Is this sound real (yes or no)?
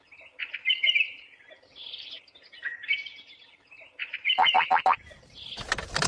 yes